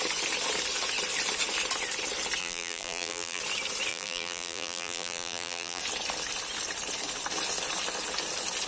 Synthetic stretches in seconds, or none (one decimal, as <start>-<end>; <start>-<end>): 2.4-3.4; 3.9-5.8